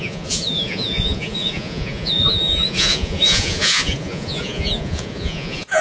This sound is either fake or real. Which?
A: fake